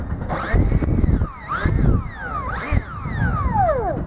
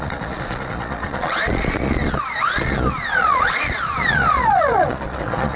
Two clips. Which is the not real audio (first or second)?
second